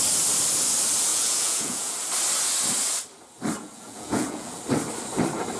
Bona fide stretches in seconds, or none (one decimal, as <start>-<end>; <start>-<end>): 0.0-1.1; 1.9-3.6; 4.6-5.6